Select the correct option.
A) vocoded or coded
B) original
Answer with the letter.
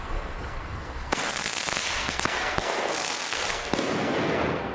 A